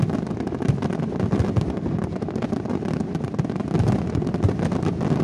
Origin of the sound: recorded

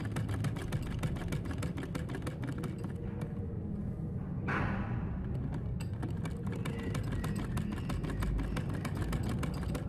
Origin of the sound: recorded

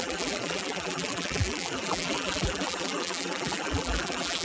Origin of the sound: remade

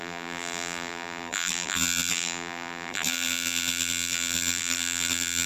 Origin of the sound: remade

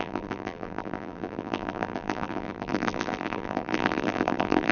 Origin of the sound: remade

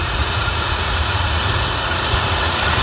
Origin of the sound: remade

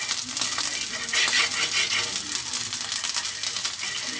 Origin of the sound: recorded